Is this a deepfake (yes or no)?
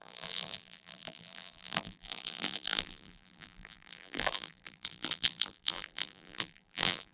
yes